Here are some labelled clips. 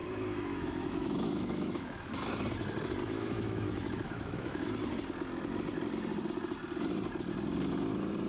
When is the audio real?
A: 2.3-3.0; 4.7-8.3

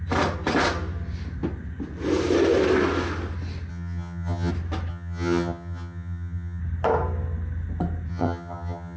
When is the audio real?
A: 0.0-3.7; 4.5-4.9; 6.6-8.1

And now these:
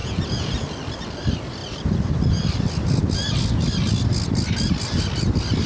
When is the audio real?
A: 0.5-5.7

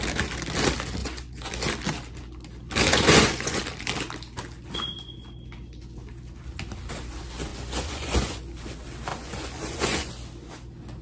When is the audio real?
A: 0.0-1.0; 1.5-2.9; 3.6-7.5; 8.4-9.1; 10.1-11.0

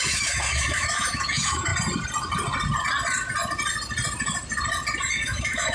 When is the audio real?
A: 1.7-5.1